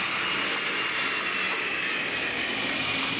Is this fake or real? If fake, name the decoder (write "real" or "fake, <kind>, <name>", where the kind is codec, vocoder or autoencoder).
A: real